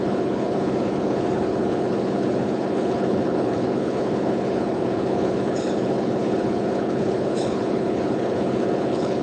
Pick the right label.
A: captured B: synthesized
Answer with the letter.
B